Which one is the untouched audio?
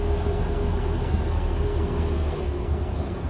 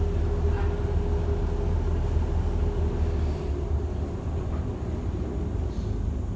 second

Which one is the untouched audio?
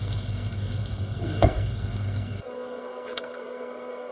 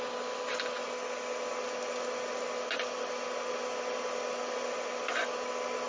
second